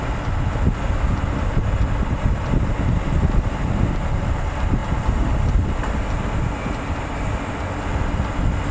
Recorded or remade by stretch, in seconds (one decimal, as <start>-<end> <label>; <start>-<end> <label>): 0.0-8.7 recorded

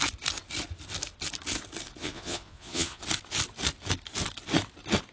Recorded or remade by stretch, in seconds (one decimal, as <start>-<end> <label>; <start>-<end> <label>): 0.0-2.0 recorded; 2.0-3.0 remade; 3.0-5.1 recorded

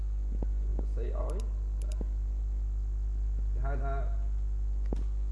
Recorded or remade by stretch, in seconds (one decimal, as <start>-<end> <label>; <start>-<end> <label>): 0.0-5.3 recorded

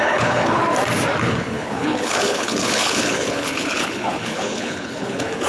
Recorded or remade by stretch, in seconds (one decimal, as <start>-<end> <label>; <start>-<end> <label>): 0.0-0.6 remade; 0.6-1.2 recorded; 1.2-5.5 remade